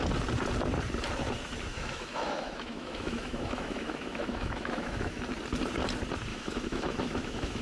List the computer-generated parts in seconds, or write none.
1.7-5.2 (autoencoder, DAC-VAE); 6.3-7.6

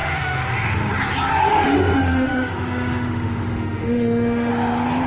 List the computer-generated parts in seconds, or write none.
0.0-0.9 (autoencoder, DAC-VAE); 1.5-4.5